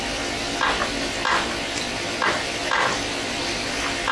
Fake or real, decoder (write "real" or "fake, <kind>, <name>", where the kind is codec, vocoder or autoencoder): real